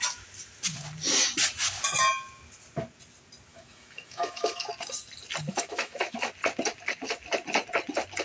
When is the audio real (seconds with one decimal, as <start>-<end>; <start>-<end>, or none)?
0.0-3.5; 4.7-5.5; 6.3-8.2